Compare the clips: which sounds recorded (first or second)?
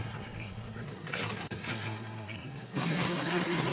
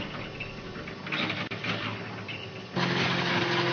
second